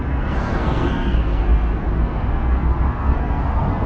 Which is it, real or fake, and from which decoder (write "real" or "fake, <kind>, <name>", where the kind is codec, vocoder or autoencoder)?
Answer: fake, codec, SNAC